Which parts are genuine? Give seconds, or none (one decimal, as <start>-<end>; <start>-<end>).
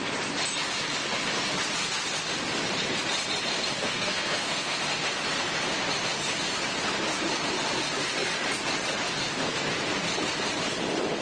0.0-3.8; 4.8-11.2